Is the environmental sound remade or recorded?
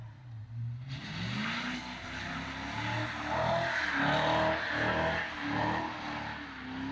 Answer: recorded